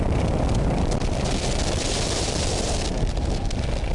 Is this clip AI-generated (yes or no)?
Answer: no